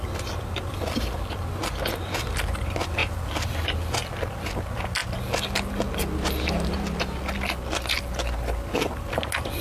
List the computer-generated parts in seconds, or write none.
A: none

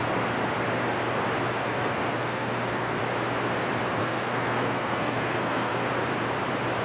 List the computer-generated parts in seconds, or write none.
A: 1.6-3.0 (codec, SNAC); 4.0-5.9

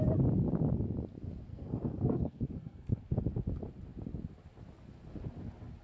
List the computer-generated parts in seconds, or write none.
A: 1.5-3.0 (codec, SNAC)

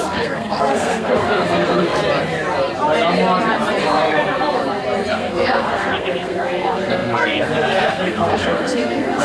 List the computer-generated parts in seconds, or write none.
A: 0.0-2.0 (codec, SNAC); 3.8-4.6; 5.1-9.2

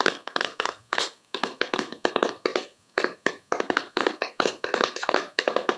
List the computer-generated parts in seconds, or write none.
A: 0.0-5.8 (codec, SNAC)

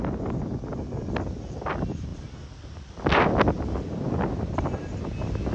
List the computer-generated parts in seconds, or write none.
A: none

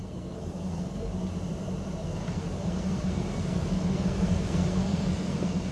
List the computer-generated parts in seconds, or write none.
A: 0.0-1.1 (codec, SNAC); 2.0-5.7

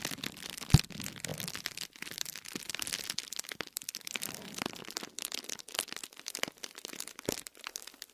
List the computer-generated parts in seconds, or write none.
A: none